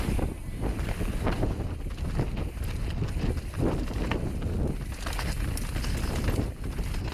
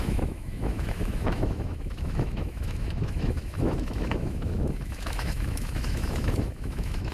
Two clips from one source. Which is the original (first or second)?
first